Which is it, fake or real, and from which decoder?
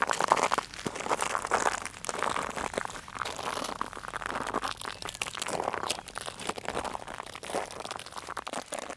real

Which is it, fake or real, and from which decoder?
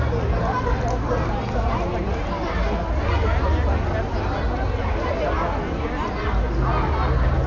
real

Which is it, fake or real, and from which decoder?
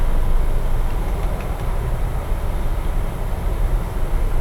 real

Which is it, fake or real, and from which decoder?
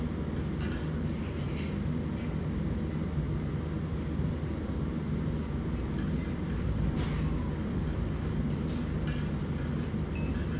real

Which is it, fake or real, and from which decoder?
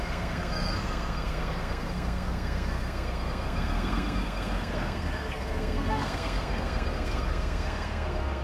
fake, codec, SNAC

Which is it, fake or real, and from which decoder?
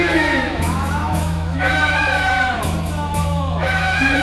fake, autoencoder, DAC-VAE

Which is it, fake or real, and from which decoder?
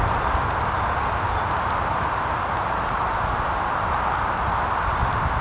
real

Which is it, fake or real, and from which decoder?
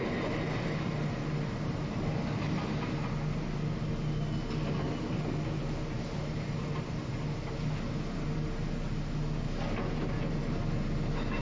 real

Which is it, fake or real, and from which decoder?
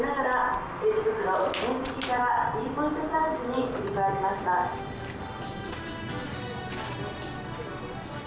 real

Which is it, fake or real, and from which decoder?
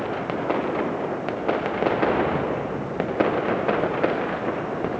real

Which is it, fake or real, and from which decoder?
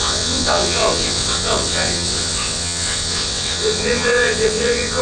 fake, vocoder, WaveNeXt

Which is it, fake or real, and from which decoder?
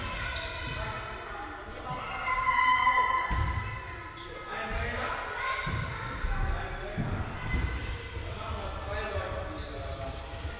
real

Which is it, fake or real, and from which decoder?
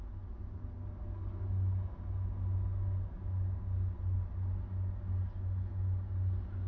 real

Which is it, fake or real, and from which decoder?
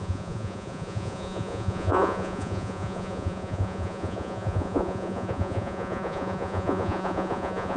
fake, vocoder, Vocos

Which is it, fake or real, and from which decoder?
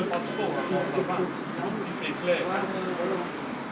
real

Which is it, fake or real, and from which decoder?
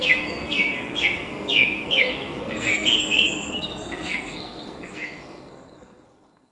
fake, codec, SNAC